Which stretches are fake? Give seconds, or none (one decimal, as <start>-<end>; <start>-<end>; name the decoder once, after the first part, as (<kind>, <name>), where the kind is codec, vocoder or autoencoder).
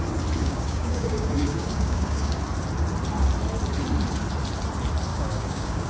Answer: 0.4-2.4 (codec, DAC); 5.1-5.9